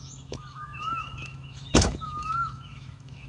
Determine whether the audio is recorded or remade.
remade